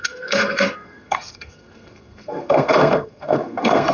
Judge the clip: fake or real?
fake